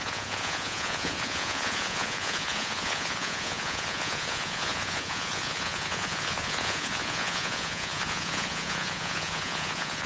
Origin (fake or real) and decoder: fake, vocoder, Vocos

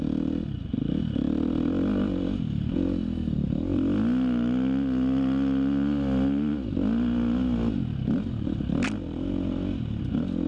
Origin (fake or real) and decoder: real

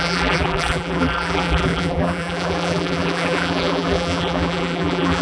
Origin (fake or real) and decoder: fake, vocoder, BigVGAN v2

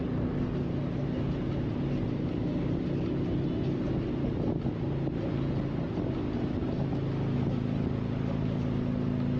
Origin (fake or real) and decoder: real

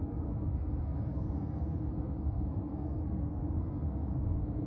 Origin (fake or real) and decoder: fake, codec, SNAC